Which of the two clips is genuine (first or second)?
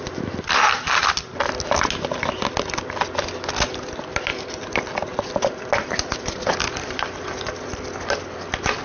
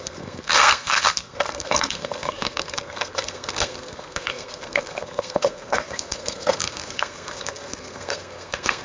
first